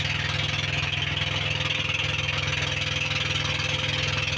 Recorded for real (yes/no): yes